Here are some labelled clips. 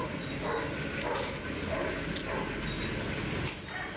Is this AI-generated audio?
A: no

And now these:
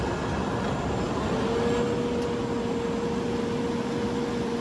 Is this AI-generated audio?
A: no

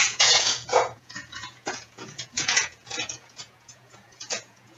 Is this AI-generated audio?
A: yes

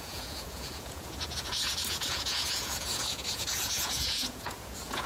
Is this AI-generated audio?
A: yes